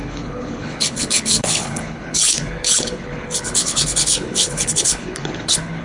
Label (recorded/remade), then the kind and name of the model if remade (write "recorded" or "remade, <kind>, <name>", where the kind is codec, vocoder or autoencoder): remade, codec, HILCodec